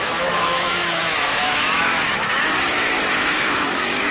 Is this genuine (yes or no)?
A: no